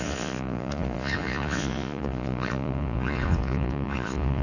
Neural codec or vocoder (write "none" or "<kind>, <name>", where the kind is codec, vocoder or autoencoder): vocoder, Vocos